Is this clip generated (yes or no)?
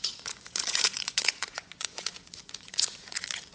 yes